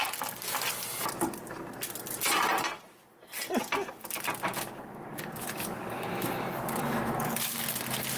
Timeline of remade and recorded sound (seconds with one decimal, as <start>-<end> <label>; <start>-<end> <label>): 0.0-4.5 recorded; 4.5-6.1 remade; 6.1-8.2 recorded